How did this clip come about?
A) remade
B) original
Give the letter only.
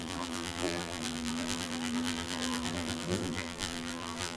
A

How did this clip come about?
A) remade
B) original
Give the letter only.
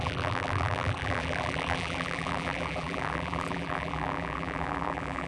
A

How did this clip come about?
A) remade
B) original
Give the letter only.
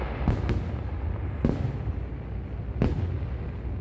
B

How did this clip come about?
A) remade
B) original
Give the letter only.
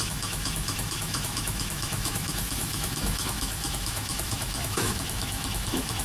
A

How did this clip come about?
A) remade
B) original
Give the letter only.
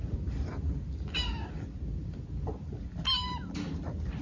B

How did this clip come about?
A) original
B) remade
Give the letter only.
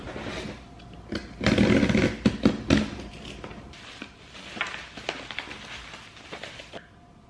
A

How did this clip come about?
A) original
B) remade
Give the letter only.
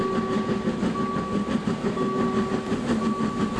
A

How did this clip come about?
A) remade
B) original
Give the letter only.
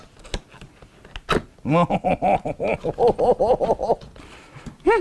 B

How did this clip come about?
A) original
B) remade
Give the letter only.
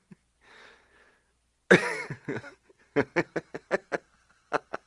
A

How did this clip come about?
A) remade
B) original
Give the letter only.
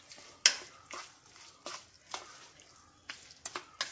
B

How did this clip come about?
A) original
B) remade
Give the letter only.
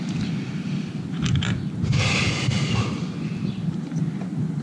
A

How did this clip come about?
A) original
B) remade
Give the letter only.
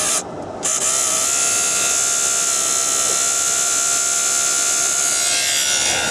A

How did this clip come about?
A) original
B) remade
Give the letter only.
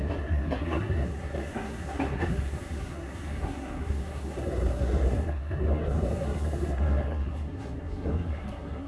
B